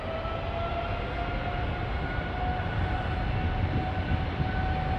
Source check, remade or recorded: recorded